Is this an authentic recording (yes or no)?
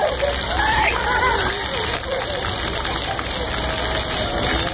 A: yes